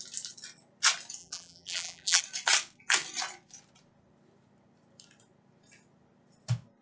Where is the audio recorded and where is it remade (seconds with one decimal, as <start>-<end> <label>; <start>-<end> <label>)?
0.0-1.2 recorded; 1.2-2.2 remade; 2.2-6.8 recorded